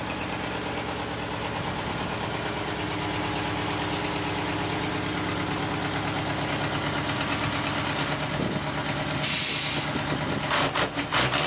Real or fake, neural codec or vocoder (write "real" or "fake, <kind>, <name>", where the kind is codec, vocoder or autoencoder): real